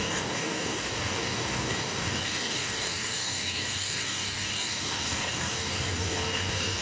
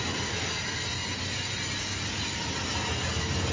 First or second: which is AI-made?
first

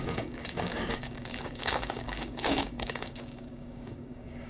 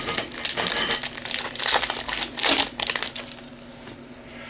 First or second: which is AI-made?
first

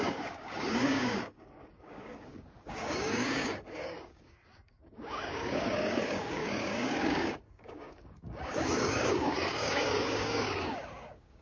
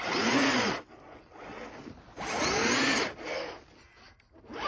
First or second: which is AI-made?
first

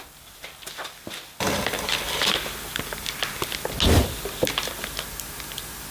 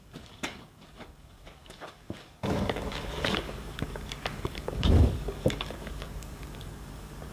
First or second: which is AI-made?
second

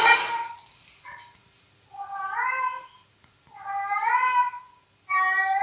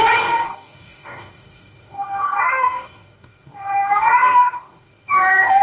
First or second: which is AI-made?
second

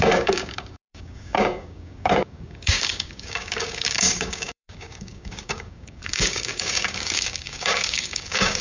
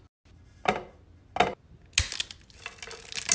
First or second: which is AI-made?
first